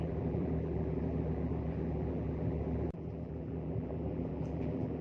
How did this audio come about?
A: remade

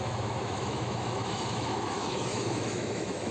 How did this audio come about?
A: remade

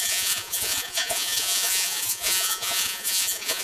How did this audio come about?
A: remade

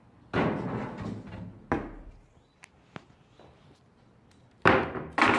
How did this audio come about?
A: recorded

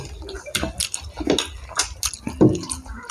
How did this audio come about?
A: recorded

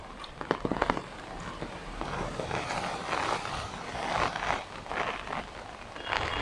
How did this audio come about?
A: recorded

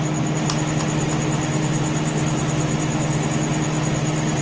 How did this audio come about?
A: recorded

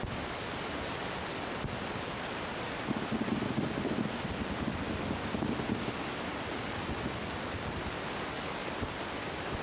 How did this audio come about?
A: recorded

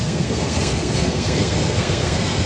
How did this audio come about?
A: remade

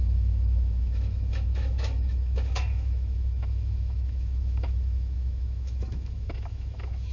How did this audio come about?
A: remade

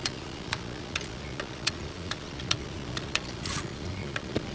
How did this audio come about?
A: remade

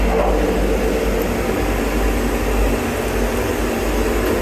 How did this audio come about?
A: recorded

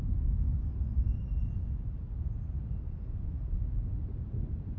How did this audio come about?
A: recorded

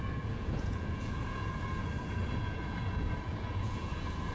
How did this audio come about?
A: remade